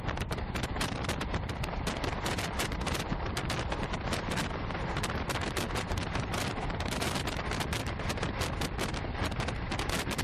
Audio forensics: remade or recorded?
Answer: recorded